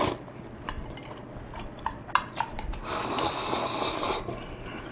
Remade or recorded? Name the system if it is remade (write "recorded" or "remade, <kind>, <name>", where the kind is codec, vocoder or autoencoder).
recorded